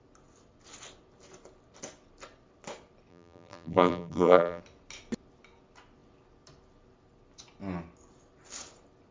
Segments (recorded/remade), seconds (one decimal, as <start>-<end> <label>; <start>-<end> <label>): 0.0-3.1 recorded; 3.1-4.6 remade; 4.6-9.1 recorded